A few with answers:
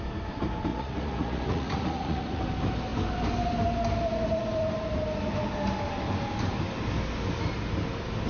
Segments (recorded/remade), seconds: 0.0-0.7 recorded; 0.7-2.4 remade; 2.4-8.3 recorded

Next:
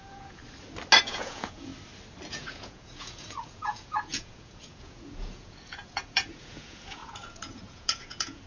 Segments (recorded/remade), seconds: 0.0-0.4 remade; 0.4-1.0 recorded; 1.0-1.7 remade; 1.7-2.3 recorded; 2.3-8.5 remade

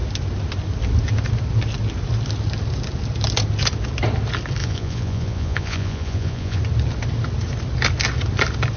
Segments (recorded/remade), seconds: 0.0-4.6 recorded; 4.6-6.6 remade; 6.6-8.8 recorded

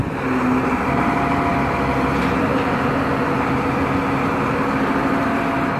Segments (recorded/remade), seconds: 0.0-5.8 recorded